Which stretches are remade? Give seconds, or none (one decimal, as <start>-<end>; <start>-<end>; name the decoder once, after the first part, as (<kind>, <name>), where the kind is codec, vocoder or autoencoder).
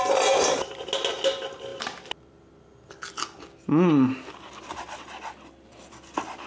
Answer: none